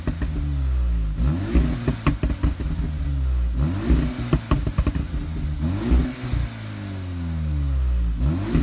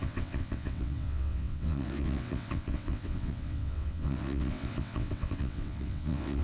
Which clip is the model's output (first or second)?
second